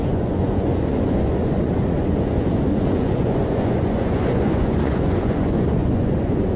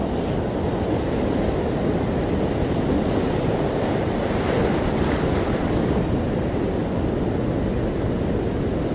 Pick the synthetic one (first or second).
first